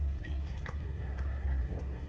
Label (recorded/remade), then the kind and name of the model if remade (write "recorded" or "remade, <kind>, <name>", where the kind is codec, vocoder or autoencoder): remade, codec, SNAC